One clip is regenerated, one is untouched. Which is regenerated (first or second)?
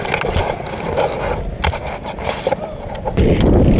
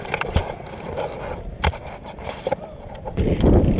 second